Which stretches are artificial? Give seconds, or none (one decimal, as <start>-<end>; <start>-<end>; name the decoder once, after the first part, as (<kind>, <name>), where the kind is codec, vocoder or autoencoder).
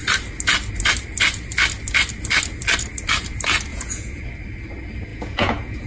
3.7-4.2 (vocoder, Vocos); 5.1-5.9